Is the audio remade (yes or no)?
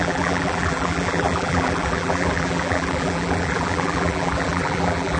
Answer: yes